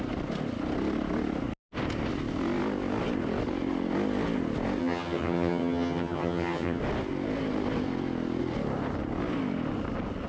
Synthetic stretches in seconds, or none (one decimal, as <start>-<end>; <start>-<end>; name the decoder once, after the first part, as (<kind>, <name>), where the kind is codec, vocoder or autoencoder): 4.8-6.8 (vocoder, HiFi-GAN)